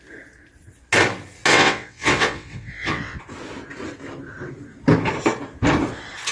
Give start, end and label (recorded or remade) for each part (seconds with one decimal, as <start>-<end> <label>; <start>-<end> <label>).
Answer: 0.0-1.5 recorded; 1.5-3.2 remade; 3.2-6.3 recorded